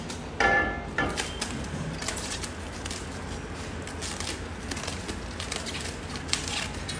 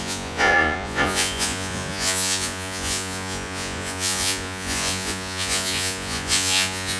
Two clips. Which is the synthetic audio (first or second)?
second